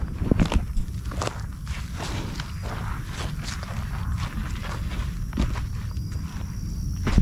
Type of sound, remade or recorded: recorded